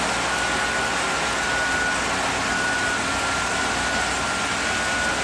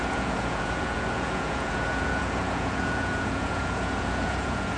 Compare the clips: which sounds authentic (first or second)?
first